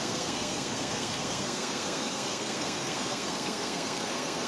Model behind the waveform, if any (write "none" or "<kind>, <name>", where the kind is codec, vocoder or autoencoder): codec, SNAC